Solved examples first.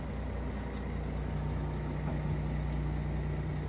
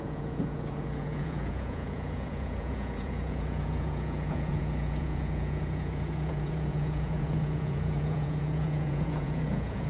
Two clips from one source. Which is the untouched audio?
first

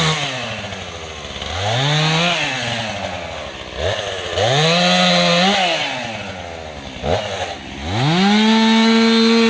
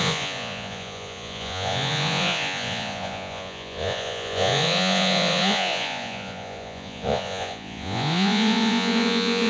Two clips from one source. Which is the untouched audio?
first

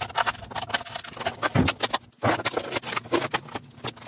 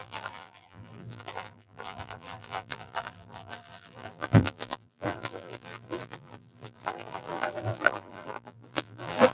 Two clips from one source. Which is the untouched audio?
first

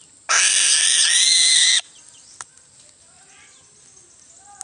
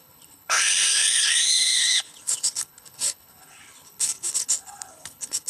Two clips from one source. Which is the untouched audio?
first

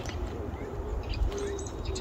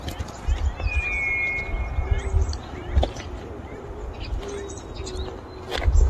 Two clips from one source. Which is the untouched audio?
second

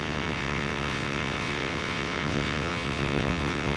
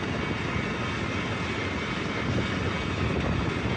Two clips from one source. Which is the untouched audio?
second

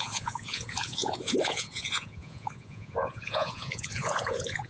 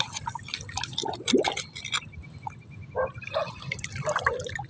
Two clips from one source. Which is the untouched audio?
second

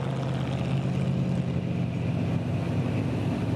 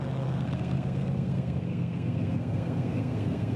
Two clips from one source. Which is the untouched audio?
first